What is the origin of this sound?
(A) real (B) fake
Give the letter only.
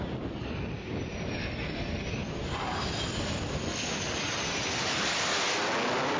A